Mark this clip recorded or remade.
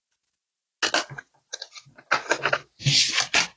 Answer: recorded